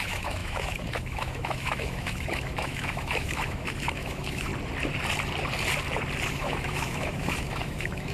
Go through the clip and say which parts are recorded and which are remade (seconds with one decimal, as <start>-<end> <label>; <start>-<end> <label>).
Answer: 0.0-4.5 remade; 4.5-6.3 recorded; 6.3-8.1 remade